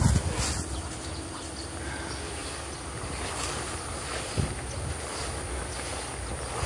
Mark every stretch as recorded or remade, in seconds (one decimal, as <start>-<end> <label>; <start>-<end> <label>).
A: 0.0-6.7 recorded